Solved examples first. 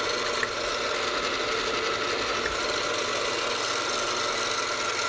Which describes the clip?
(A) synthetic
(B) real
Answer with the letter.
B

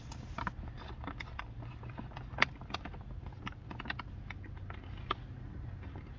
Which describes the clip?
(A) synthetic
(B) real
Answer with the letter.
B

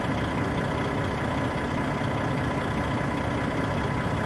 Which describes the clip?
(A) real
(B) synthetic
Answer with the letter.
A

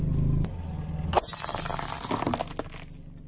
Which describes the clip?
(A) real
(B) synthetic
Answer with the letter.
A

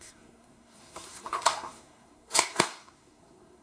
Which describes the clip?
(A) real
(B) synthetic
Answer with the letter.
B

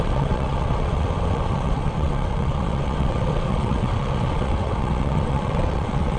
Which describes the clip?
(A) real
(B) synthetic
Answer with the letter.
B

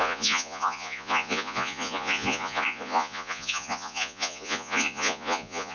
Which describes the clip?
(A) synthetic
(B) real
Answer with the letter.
A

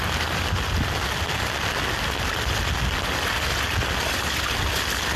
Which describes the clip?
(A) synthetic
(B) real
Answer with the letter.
B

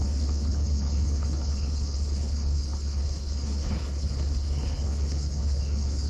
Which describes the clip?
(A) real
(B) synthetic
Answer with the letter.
B